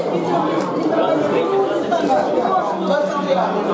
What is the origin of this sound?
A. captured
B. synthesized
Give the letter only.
A